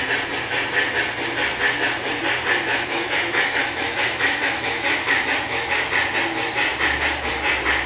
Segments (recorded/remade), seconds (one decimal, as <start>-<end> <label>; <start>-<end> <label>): 0.0-2.7 recorded; 2.7-5.9 remade; 5.9-7.9 recorded